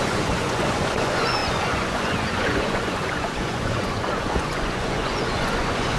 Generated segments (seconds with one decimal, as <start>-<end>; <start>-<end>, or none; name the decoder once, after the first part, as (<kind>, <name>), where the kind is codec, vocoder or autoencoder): 0.0-6.0 (vocoder, Vocos)